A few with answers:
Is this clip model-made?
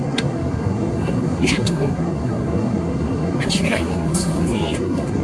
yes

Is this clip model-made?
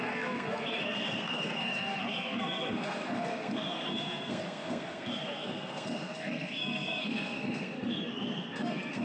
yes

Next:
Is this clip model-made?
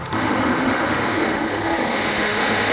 yes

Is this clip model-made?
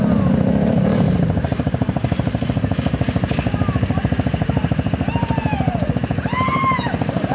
yes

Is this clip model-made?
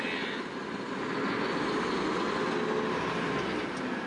no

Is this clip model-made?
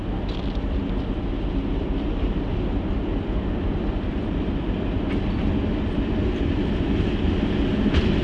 no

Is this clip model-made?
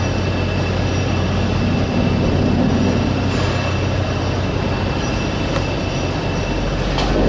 no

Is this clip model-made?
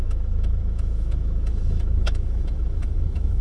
yes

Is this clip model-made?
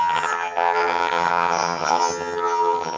yes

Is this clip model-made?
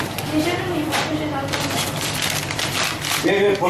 yes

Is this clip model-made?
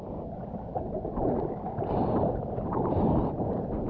no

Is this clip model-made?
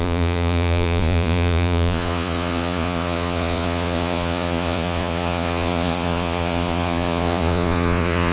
yes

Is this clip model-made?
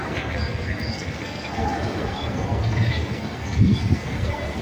yes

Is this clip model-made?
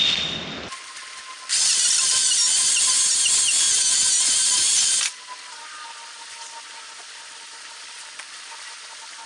yes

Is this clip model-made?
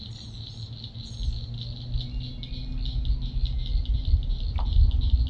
no